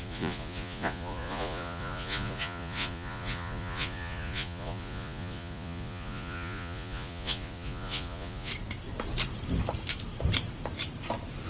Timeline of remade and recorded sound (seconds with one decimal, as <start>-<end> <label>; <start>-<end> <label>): 0.0-8.5 remade; 8.5-11.5 recorded